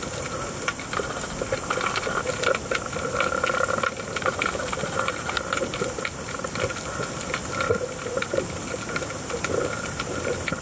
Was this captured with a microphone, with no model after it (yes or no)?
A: yes